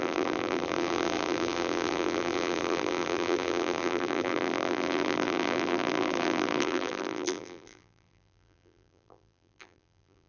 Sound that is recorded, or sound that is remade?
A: remade